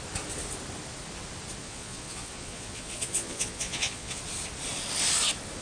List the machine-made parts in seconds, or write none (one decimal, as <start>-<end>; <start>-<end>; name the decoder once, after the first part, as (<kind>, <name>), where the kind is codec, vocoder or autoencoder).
1.6-4.2 (vocoder, Vocos)